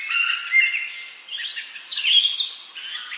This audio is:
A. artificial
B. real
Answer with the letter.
B